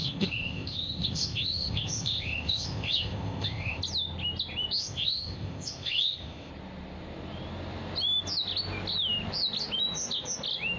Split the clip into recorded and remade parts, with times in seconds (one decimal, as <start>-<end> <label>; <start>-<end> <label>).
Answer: 0.0-3.8 remade; 3.8-4.8 recorded; 4.8-6.5 remade; 6.5-10.8 recorded